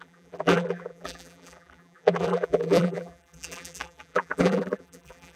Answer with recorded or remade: remade